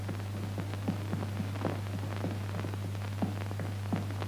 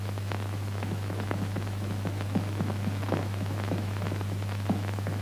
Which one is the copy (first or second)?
second